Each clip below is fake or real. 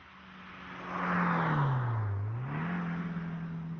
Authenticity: real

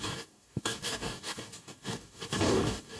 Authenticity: fake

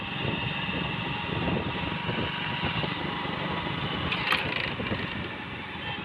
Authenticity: real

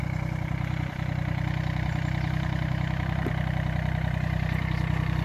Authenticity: fake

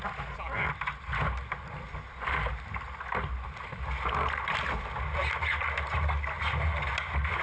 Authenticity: real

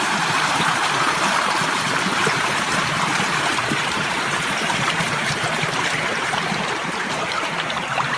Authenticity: fake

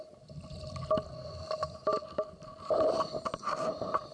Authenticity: real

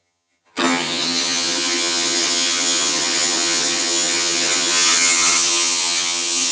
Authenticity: fake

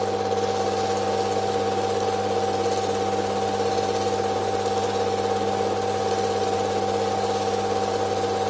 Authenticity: real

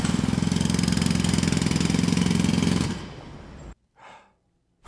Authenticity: real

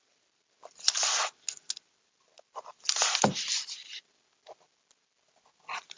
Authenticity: real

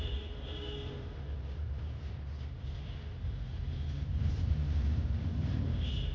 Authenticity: fake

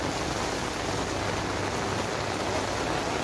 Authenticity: real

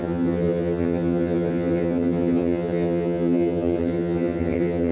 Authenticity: fake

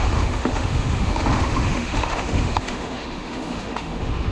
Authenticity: fake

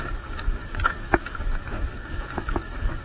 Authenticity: fake